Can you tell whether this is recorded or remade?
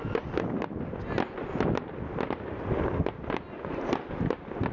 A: recorded